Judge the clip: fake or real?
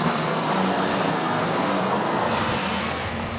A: fake